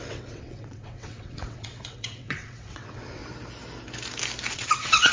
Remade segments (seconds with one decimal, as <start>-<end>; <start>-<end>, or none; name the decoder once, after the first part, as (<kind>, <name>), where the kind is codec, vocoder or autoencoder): 0.0-3.2 (vocoder, WaveNeXt); 4.5-5.1